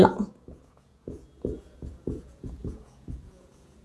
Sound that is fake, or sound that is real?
fake